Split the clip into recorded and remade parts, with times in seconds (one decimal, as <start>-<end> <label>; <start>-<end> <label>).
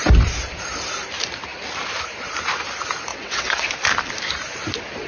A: 0.0-3.1 recorded; 3.1-3.7 remade; 3.7-5.1 recorded